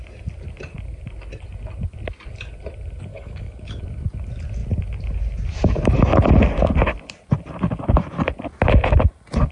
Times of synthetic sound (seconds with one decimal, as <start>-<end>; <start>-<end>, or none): 3.1-3.8